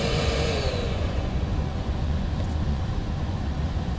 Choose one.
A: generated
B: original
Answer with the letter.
A